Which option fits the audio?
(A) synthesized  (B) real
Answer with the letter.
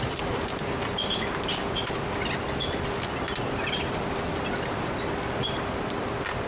B